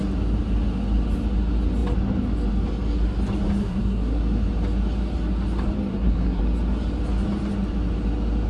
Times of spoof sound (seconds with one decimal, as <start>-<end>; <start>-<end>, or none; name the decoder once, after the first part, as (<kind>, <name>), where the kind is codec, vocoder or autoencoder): 3.6-4.2 (codec, SNAC); 5.9-6.4

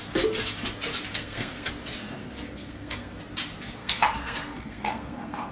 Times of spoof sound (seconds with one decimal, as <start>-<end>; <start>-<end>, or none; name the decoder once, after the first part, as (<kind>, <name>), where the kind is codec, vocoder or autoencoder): 1.1-1.7 (codec, SNAC); 2.2-3.2; 3.8-5.5

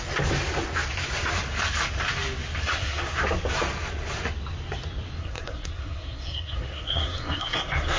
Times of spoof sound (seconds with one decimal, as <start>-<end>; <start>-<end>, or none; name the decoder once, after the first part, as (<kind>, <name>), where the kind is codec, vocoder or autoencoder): 2.7-3.2 (codec, SNAC); 5.2-8.0

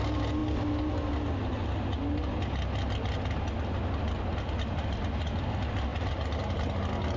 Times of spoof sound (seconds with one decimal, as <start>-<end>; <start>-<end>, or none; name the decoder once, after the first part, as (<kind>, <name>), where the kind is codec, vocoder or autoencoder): none

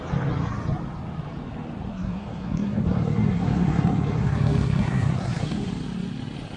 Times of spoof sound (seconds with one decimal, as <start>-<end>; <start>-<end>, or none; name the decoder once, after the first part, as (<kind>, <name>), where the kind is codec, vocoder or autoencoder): 1.9-5.7 (codec, SNAC)